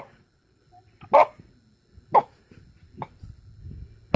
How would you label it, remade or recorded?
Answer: recorded